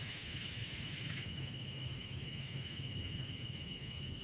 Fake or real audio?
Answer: fake